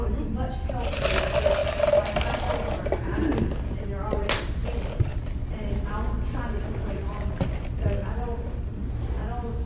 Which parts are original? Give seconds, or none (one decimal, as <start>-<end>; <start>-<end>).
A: 0.0-1.6; 3.4-9.7